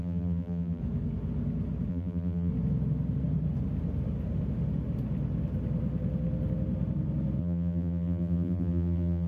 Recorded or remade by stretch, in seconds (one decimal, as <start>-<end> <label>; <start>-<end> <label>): 0.0-0.8 remade; 0.8-1.9 recorded; 1.9-2.5 remade; 2.5-7.4 recorded; 7.4-9.3 remade